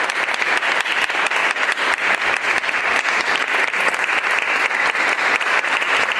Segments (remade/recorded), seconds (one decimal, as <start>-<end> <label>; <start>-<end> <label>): 0.0-6.2 recorded